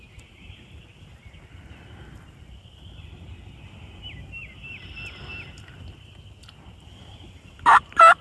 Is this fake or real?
real